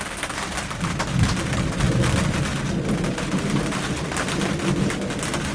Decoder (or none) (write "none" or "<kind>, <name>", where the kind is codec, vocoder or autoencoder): none